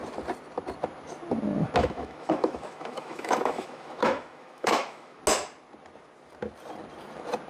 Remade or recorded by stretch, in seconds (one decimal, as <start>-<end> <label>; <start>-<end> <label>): 0.0-1.8 recorded; 1.8-5.2 remade; 5.2-7.5 recorded